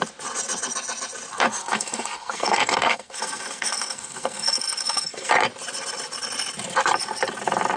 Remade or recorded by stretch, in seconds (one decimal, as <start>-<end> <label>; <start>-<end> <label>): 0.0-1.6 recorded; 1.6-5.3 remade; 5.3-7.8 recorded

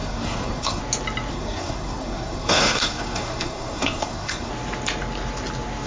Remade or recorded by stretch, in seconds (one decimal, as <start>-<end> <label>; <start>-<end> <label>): 0.0-0.8 remade; 0.8-1.3 recorded; 1.3-4.5 remade; 4.5-5.9 recorded

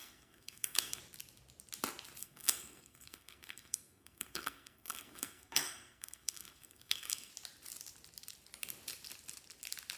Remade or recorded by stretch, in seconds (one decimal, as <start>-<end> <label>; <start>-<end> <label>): 0.0-1.0 remade; 1.0-2.2 recorded; 2.2-7.3 remade; 7.3-10.0 recorded

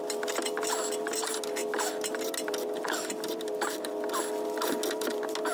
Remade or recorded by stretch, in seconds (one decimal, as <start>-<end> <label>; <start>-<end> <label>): 0.0-5.5 recorded

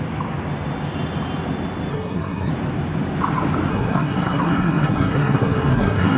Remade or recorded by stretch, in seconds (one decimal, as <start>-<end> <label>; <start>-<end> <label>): 0.0-1.9 recorded; 1.9-2.5 remade; 2.5-3.7 recorded; 3.7-6.2 remade

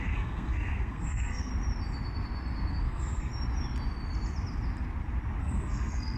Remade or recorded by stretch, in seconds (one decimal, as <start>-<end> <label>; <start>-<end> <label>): 0.0-1.5 remade; 1.5-2.7 recorded; 2.7-3.3 remade; 3.3-5.4 recorded; 5.4-6.2 remade

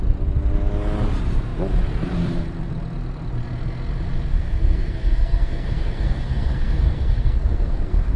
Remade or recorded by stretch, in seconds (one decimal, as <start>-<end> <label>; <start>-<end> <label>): 0.0-4.3 recorded; 4.3-8.2 remade

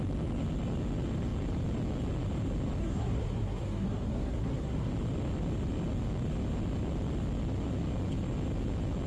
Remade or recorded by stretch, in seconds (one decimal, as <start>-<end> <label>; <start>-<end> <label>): 0.0-2.8 recorded; 2.8-4.9 remade; 4.9-9.1 recorded